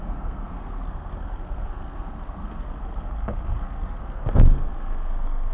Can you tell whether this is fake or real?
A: fake